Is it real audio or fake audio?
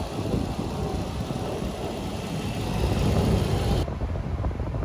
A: real